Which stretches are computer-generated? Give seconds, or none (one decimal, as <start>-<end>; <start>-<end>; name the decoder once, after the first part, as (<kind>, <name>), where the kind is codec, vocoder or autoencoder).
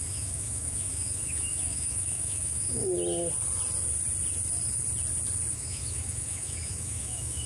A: 0.0-2.8 (autoencoder, DAC-VAE); 5.5-7.5